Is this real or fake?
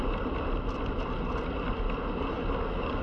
fake